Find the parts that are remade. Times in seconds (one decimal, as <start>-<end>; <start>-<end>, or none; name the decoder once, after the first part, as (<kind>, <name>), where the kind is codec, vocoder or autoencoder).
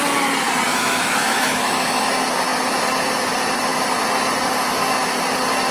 0.7-2.1 (autoencoder, DAC-VAE)